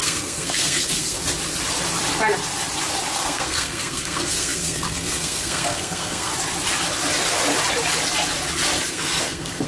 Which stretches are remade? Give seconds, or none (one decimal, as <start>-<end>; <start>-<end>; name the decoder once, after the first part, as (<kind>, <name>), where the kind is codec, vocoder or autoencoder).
0.0-1.2 (codec, SNAC); 3.1-6.3; 8.9-9.7